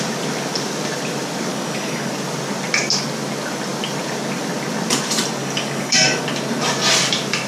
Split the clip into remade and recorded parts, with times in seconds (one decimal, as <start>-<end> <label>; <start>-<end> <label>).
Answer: 0.0-1.5 recorded; 1.5-2.1 remade; 2.1-5.4 recorded; 5.4-6.2 remade; 6.2-7.5 recorded